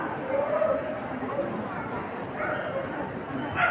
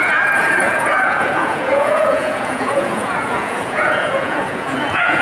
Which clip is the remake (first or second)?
second